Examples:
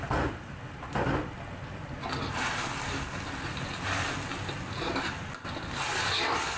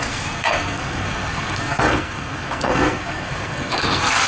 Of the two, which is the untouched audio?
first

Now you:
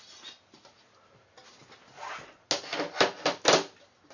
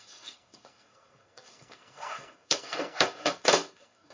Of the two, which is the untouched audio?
first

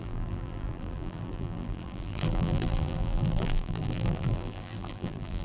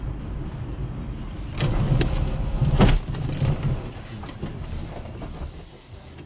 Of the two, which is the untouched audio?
second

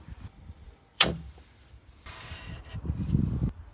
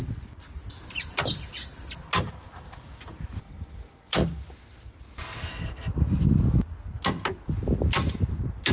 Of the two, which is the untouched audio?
second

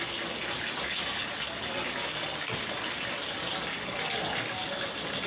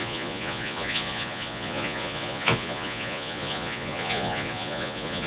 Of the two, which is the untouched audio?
first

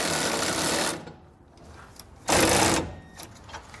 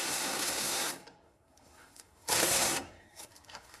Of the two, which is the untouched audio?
first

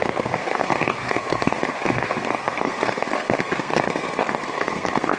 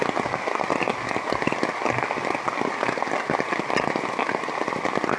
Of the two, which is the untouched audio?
second